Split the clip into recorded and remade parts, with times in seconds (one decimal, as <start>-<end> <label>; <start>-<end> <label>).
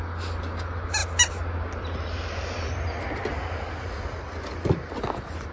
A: 0.0-5.5 recorded